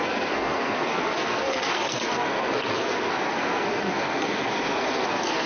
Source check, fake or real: fake